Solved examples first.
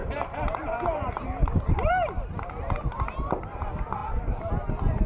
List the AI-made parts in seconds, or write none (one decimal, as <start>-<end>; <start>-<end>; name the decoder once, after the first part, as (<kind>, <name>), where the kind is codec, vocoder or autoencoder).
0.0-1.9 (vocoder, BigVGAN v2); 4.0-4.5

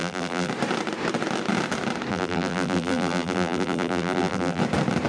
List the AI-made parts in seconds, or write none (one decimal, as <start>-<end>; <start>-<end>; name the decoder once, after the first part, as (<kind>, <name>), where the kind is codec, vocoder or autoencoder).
0.0-0.5 (vocoder, BigVGAN v2); 2.1-4.6

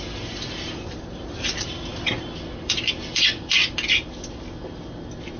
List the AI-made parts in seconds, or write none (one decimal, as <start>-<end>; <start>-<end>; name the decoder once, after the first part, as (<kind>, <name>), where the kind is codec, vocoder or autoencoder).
0.0-3.6 (vocoder, BigVGAN v2)